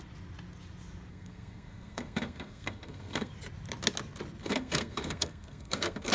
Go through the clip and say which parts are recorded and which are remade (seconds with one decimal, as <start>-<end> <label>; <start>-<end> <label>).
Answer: 0.0-1.1 recorded; 1.1-3.3 remade; 3.3-4.4 recorded; 4.4-6.1 remade